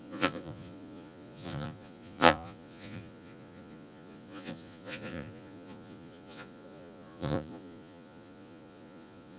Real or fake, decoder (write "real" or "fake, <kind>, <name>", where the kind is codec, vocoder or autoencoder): fake, vocoder, Vocos